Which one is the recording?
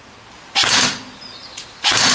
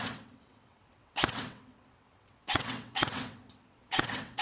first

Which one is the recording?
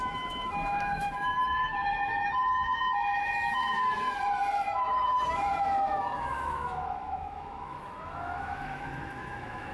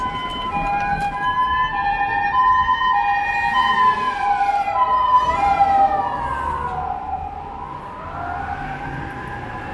second